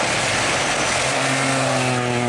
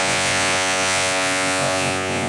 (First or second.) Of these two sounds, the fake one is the second